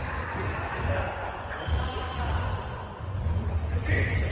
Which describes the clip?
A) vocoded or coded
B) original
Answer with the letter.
A